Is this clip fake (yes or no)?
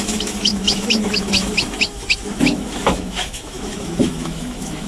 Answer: yes